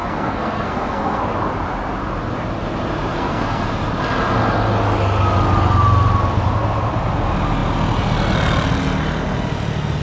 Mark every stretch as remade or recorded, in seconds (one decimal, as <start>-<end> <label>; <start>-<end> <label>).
0.0-1.2 remade; 1.2-3.1 recorded; 3.1-3.6 remade; 3.6-10.0 recorded